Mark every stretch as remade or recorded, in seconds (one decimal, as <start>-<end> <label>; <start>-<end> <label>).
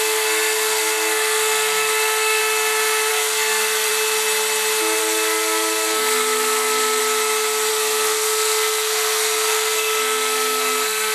0.0-2.4 remade; 2.4-3.1 recorded; 3.1-3.9 remade; 3.9-5.0 recorded; 5.0-7.0 remade; 7.0-7.7 recorded; 7.7-11.1 remade